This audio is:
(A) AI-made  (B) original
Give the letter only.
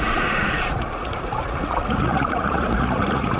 A